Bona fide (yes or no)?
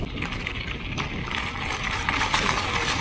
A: yes